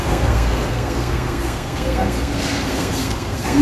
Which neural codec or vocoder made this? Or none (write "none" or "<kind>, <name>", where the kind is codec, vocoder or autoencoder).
codec, SNAC